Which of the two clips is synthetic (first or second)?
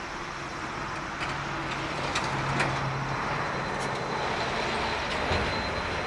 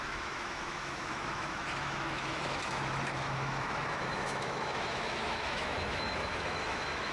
second